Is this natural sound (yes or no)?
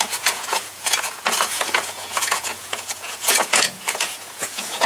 no